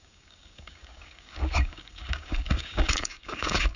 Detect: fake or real fake